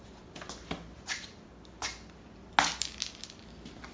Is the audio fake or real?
real